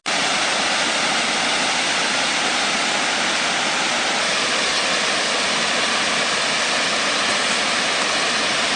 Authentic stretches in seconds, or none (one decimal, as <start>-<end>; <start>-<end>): 0.0-8.8